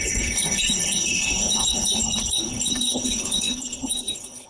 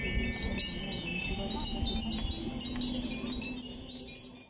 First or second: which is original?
second